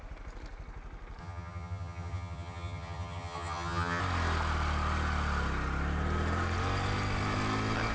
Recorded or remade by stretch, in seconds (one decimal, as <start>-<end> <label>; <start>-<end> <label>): 0.0-1.2 recorded; 1.2-4.0 remade; 4.0-7.9 recorded